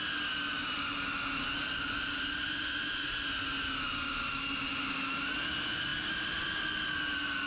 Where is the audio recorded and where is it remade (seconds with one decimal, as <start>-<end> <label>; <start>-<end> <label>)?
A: 0.0-7.5 recorded